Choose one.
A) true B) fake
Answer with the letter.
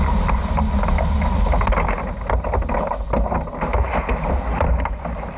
A